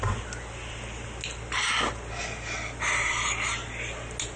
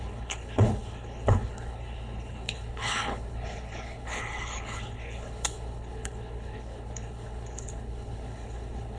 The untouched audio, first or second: first